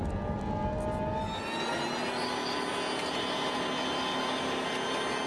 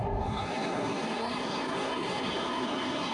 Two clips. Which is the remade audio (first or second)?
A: second